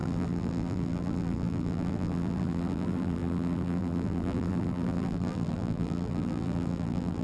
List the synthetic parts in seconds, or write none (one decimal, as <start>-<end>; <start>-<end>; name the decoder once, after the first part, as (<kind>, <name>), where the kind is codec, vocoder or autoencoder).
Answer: 0.0-7.2 (vocoder, BigVGAN v2)